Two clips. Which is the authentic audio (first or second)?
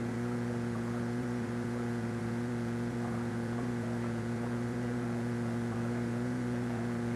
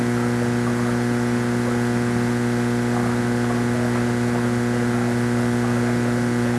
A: second